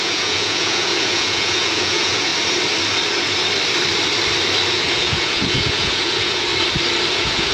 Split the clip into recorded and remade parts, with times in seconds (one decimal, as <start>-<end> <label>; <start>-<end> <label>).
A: 0.0-2.3 remade; 2.3-4.7 recorded; 4.7-6.5 remade; 6.5-7.1 recorded; 7.1-7.5 remade